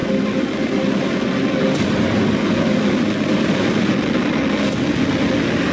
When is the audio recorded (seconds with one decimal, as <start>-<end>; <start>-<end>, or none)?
0.0-5.7